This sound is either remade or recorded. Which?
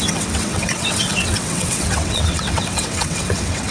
remade